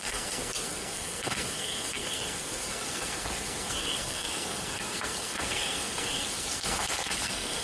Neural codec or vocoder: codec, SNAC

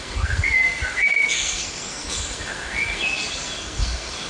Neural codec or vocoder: codec, SNAC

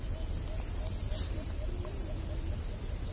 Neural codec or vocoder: none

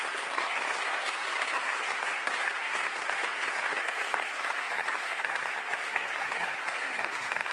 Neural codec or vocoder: codec, SNAC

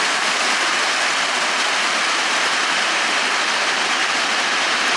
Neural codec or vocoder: none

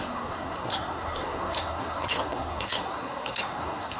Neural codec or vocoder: codec, SNAC